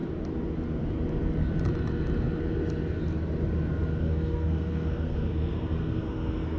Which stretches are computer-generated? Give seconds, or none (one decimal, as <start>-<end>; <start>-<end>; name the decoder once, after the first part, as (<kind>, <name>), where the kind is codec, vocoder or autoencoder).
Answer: 4.0-6.6 (codec, SNAC)